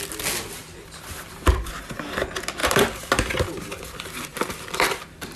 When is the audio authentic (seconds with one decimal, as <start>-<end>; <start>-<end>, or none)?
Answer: 0.0-0.6; 2.2-2.6; 3.1-4.3; 5.0-5.4

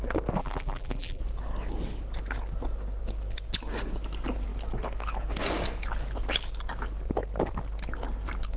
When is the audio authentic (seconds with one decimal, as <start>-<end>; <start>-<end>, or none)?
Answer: 0.0-0.4; 1.2-8.6

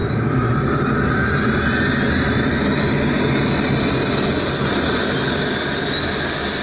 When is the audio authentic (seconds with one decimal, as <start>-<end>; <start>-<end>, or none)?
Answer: 0.0-6.6

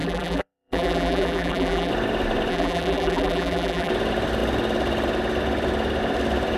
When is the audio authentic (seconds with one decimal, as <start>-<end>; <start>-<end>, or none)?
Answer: 1.9-2.5; 3.9-6.6

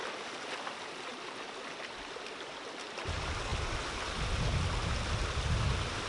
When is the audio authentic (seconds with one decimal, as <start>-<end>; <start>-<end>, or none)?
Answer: 0.0-1.1; 3.0-6.1

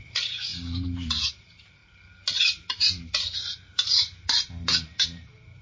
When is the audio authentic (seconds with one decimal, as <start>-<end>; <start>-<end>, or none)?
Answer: 1.8-2.7